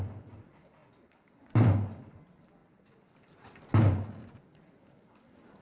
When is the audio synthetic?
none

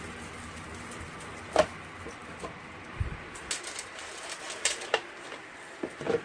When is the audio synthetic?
0.0-2.2 (vocoder, BigVGAN v2)

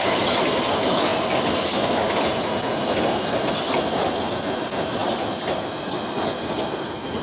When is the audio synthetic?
none

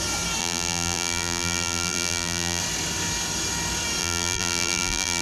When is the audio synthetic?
0.4-2.6 (vocoder, BigVGAN v2); 4.0-5.2

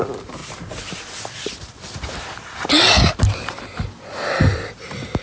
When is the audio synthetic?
none

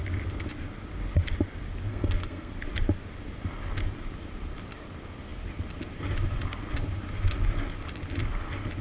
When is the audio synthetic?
1.9-2.5 (codec, SNAC)

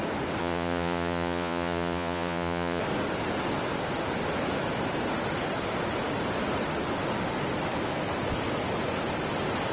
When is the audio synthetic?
0.4-2.8 (vocoder, Vocos)